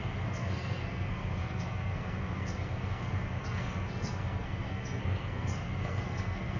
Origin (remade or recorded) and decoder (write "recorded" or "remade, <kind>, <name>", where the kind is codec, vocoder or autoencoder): remade, codec, SNAC